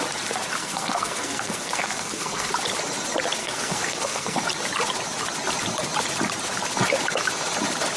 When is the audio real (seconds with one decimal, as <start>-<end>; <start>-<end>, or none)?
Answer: 0.0-0.6; 2.5-3.4; 4.4-8.0